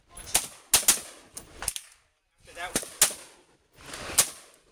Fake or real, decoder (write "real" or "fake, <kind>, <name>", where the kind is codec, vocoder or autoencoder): real